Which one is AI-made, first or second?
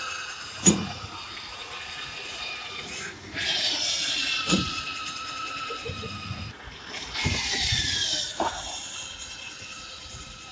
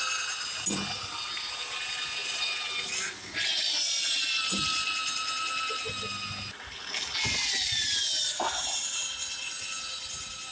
first